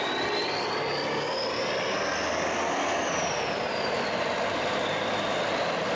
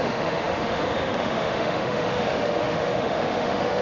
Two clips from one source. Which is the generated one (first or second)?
second